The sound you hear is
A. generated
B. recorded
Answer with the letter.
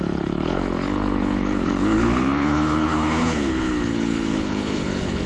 A